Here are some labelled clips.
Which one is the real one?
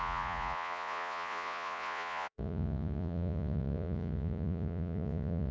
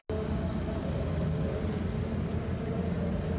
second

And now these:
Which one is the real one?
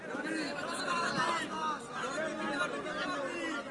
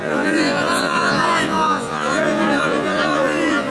first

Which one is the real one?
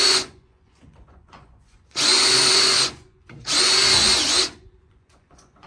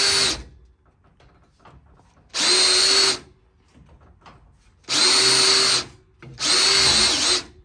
second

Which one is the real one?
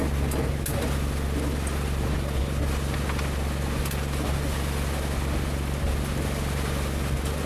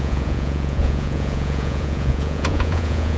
first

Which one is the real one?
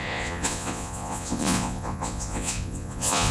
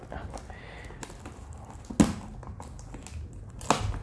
second